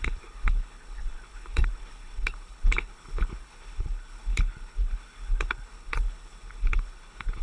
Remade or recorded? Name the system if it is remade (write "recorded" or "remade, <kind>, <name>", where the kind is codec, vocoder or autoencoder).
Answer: remade, codec, HILCodec